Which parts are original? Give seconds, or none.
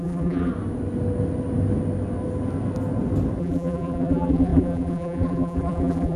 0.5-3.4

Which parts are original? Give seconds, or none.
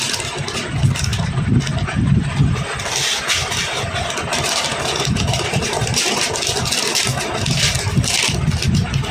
0.0-3.4; 6.2-9.1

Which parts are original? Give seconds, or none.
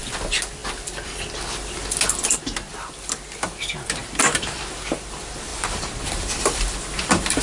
0.0-4.0; 4.6-5.5